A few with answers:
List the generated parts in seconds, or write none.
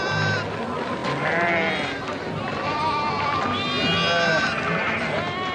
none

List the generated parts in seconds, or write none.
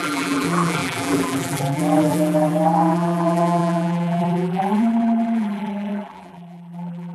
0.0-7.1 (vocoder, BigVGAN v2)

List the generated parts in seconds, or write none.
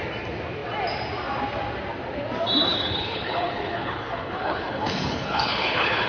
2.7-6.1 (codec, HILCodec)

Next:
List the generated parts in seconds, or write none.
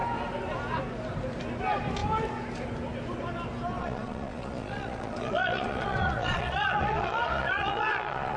3.8-8.4 (vocoder, Vocos)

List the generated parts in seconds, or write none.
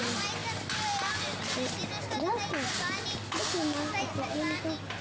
none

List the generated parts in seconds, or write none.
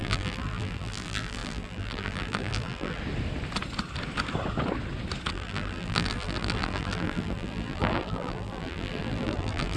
0.0-3.0 (vocoder, BigVGAN v2); 5.3-9.8